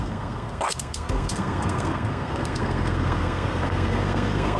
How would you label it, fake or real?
fake